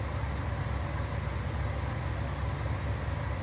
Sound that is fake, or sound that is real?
real